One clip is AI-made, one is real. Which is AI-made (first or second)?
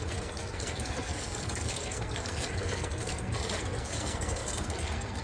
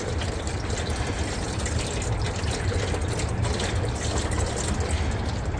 first